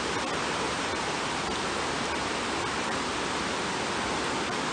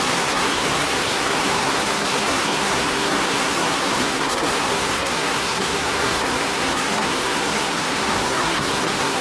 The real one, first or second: first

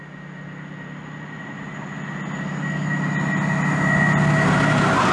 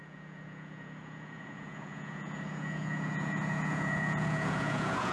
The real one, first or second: first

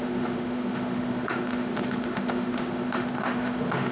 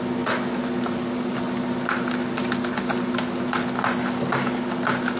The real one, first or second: second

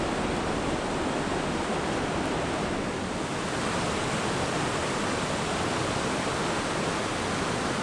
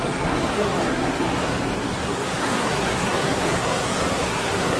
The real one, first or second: first